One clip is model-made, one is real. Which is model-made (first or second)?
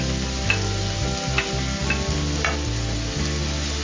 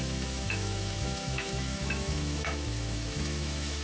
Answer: second